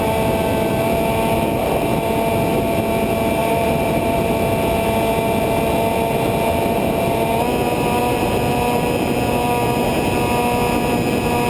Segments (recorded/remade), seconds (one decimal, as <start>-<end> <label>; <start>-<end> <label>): 0.0-3.4 recorded; 3.4-4.3 remade; 4.3-11.5 recorded